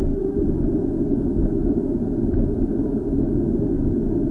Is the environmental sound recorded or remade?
recorded